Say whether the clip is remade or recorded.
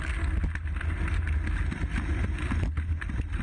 recorded